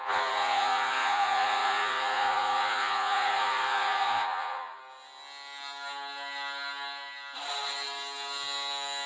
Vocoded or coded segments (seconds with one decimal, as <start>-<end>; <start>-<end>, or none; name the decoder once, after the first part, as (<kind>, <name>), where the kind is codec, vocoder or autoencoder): 0.0-4.8 (vocoder, Vocos)